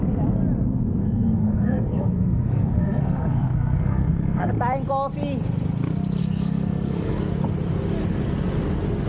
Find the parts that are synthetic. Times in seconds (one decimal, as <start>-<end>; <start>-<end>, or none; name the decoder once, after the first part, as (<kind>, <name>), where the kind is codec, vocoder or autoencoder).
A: 1.0-4.5 (codec, SNAC); 6.2-7.3